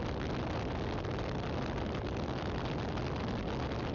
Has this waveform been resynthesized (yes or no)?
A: no